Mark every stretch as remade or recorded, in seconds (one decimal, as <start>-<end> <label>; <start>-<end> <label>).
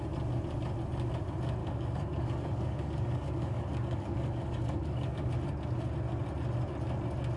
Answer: 0.0-1.6 recorded; 1.6-5.3 remade; 5.3-7.4 recorded